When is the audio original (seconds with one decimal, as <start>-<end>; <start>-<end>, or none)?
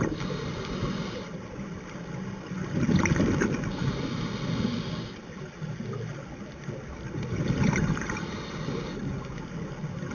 0.0-10.1